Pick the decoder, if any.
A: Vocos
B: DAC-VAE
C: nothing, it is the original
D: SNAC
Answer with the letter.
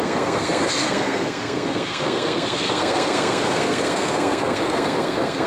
D